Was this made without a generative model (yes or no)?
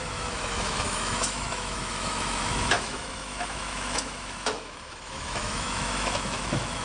no